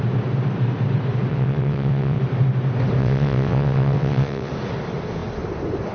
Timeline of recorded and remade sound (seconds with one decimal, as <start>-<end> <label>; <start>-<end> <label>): 0.0-1.3 recorded; 1.3-2.2 remade; 2.2-3.0 recorded; 3.0-4.5 remade; 4.5-5.9 recorded